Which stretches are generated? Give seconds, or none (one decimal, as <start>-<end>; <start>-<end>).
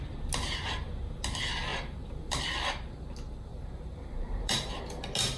1.7-2.4; 3.5-4.8